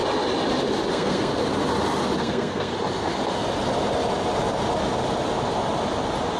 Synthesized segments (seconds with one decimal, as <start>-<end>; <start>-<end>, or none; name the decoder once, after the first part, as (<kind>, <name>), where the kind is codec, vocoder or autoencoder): 0.9-1.3 (codec, SNAC); 2.2-2.7